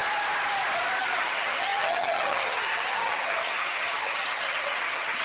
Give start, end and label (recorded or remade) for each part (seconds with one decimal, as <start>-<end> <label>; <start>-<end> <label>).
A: 0.0-1.0 recorded; 1.0-5.2 remade